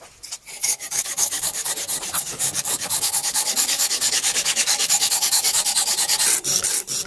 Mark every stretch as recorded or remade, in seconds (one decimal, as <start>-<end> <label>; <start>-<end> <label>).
0.0-0.6 recorded; 0.6-1.7 remade; 1.7-2.3 recorded; 2.3-6.0 remade; 6.0-7.1 recorded